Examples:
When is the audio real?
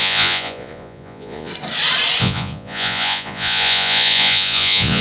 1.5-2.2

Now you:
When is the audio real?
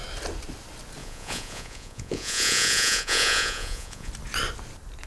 0.0-1.0; 4.1-5.1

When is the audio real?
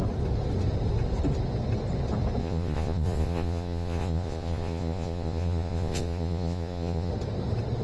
0.0-2.4; 7.1-7.8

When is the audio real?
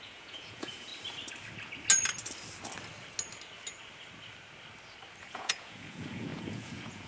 0.9-5.2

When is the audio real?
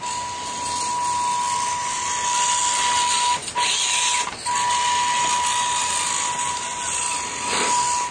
0.0-8.1